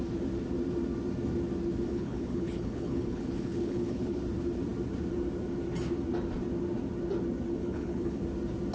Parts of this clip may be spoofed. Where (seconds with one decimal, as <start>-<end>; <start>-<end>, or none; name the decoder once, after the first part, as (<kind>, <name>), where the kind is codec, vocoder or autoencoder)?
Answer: 1.9-4.2 (codec, HILCodec); 7.6-8.2